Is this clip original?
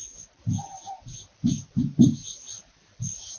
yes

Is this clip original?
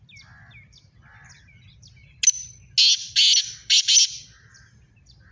yes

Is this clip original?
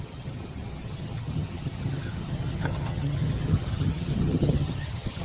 no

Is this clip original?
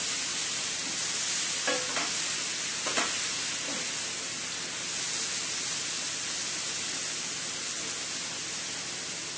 yes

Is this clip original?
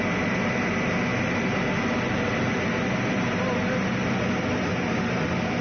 yes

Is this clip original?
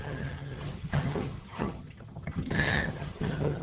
no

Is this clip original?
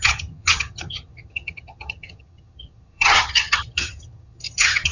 no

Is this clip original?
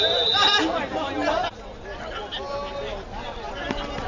yes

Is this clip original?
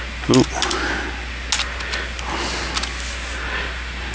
yes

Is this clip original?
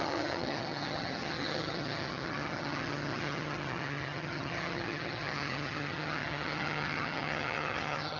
no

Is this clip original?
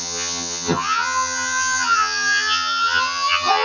no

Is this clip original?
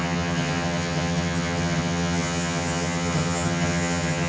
no